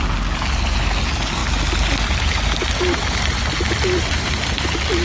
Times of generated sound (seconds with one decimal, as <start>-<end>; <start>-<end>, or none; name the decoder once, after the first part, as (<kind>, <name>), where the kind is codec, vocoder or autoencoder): none